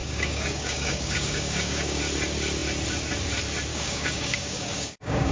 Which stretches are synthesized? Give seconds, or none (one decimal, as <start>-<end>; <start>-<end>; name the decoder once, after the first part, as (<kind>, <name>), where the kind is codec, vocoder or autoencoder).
0.0-2.0 (codec, DAC); 3.7-5.3